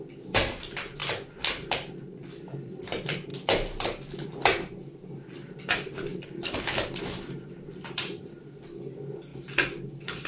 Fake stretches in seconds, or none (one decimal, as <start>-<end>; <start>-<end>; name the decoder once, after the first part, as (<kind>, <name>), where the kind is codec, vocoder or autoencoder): none